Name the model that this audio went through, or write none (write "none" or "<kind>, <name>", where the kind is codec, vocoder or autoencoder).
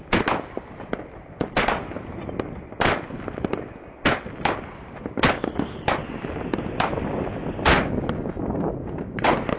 none